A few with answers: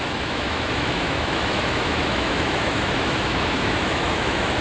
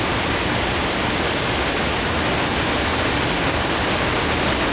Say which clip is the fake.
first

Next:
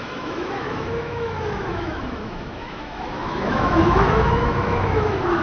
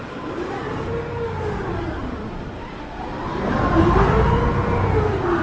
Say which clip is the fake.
first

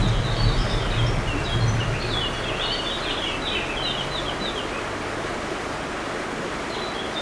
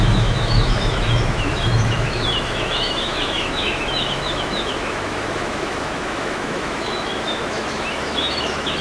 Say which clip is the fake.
second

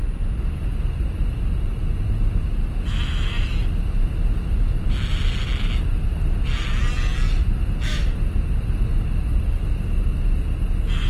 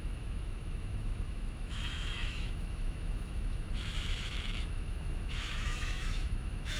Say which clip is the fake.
second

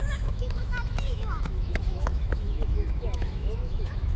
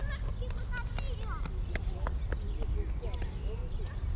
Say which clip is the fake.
first